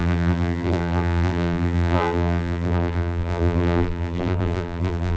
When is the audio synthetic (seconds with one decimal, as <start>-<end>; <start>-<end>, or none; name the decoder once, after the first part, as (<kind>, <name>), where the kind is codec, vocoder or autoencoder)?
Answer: 0.0-5.2 (vocoder, BigVGAN v2)